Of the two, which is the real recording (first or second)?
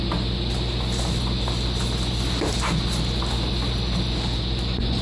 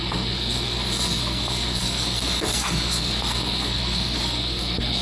first